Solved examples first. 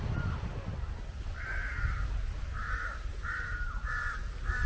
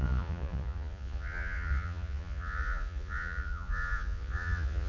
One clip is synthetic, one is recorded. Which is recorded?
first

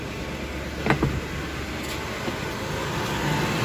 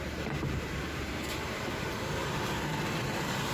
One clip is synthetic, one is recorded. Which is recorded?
first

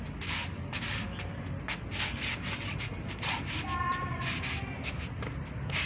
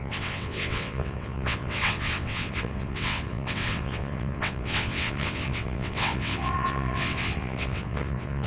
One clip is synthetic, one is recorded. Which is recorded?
first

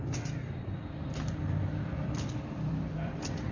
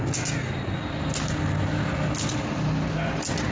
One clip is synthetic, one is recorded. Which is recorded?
second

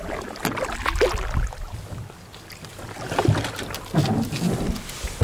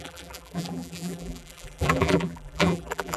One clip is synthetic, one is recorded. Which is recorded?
first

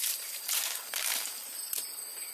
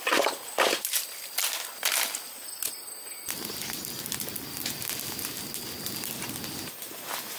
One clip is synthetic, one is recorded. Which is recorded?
second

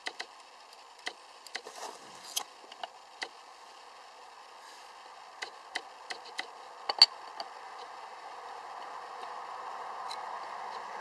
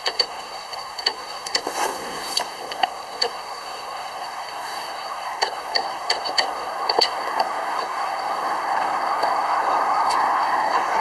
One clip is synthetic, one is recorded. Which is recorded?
first